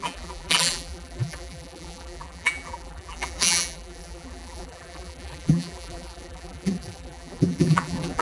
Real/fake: fake